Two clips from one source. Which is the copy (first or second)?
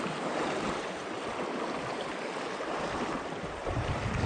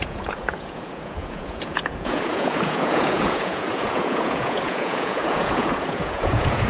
second